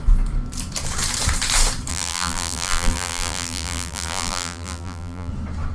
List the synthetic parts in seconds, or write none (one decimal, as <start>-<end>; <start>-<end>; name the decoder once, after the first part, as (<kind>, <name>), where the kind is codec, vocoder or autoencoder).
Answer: 1.9-5.3 (vocoder, BigVGAN v2)